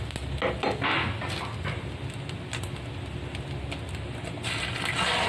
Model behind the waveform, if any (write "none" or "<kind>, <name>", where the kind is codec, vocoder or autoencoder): none